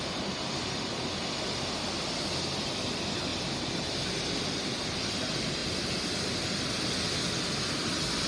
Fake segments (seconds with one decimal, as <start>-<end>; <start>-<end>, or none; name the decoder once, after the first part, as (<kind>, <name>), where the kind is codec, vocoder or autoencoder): none